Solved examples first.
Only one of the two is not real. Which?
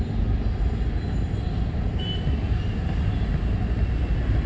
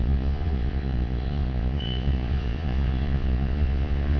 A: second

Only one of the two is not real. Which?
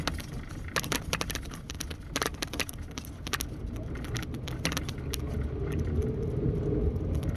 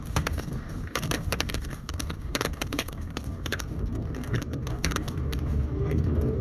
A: second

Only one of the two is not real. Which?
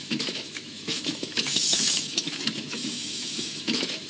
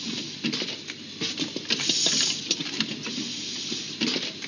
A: first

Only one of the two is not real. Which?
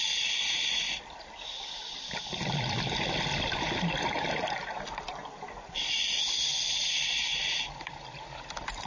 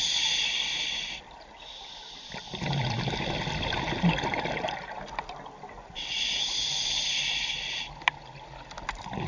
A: first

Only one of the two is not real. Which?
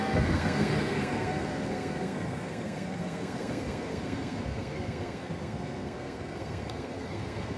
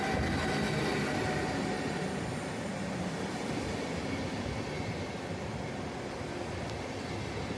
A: first